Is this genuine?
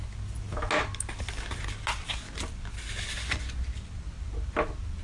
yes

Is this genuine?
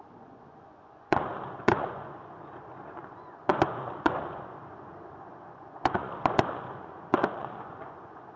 no